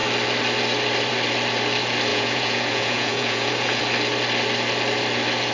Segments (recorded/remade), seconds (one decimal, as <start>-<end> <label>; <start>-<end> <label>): 0.0-2.1 recorded; 2.1-3.8 remade; 3.8-5.5 recorded